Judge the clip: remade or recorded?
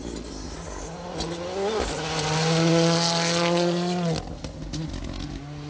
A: recorded